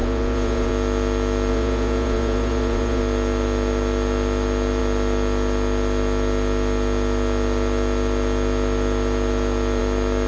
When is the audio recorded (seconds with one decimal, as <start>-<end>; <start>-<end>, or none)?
0.7-1.5; 3.0-10.3